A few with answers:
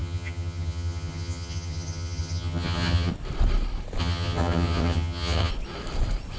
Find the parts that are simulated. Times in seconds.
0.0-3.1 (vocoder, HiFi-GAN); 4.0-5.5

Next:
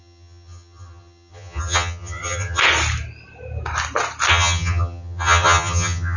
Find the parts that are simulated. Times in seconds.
0.0-2.6 (vocoder, HiFi-GAN); 4.3-6.2

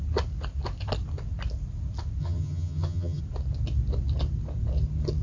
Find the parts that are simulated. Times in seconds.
2.2-3.2 (vocoder, HiFi-GAN)

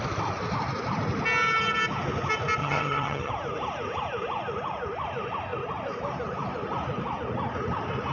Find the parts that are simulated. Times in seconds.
2.6-3.3 (vocoder, HiFi-GAN)

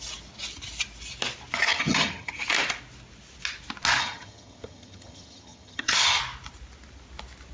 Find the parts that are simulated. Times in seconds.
1.7-2.3 (vocoder, HiFi-GAN); 4.0-6.2